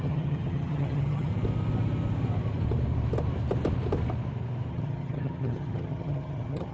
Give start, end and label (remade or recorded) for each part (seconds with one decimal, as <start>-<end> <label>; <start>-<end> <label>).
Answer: 0.0-1.3 remade; 1.3-4.7 recorded; 4.7-6.7 remade